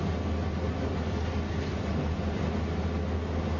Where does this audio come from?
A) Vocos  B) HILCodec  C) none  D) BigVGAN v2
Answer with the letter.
C